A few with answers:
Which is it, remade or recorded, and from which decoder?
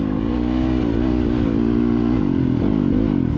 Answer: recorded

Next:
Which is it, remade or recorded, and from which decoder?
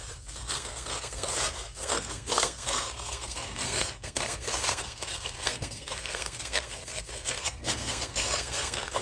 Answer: remade, codec, SNAC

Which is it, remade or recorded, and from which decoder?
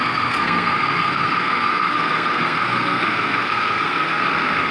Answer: remade, codec, SNAC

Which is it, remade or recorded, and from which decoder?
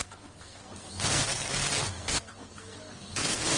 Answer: remade, codec, SNAC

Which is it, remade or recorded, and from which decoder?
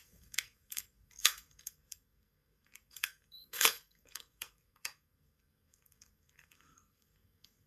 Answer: remade, codec, SNAC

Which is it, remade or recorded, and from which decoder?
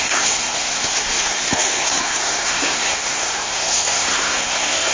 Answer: remade, codec, SNAC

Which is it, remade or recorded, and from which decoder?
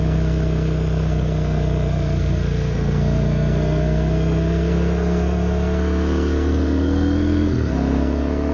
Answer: remade, codec, SNAC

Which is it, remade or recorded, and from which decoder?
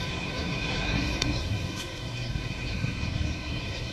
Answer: remade, codec, SNAC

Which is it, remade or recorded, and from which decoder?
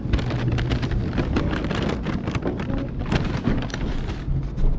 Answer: recorded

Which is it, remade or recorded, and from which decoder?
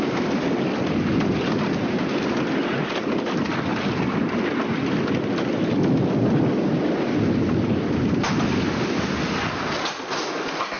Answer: recorded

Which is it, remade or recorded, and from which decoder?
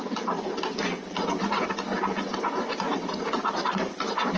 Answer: recorded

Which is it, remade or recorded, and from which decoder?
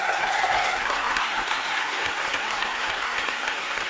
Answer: remade, codec, SNAC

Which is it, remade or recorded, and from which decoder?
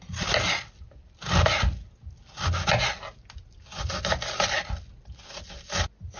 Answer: recorded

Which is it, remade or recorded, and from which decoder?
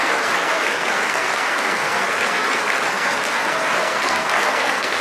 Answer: remade, codec, SNAC